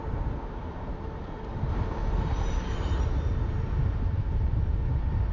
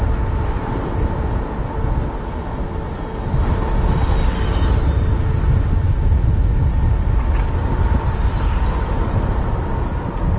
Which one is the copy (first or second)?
first